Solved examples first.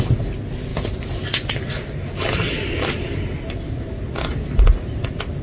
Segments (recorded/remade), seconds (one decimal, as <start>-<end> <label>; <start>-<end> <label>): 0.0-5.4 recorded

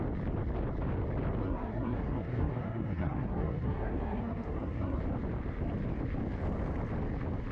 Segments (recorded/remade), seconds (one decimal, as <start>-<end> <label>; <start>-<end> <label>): 0.0-1.4 recorded; 1.4-5.0 remade; 5.0-7.5 recorded

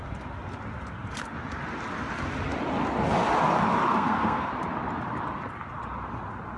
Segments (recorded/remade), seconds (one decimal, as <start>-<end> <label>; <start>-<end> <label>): 0.0-3.9 recorded; 3.9-4.5 remade; 4.5-6.6 recorded

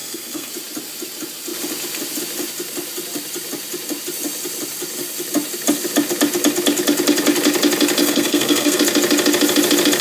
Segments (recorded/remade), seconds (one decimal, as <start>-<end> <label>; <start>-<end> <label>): 0.0-0.5 remade; 0.5-8.0 recorded; 8.0-8.8 remade; 8.8-10.0 recorded